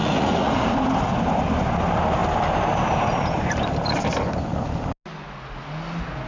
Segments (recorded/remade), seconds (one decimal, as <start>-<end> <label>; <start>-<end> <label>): 0.0-0.5 remade; 0.5-6.3 recorded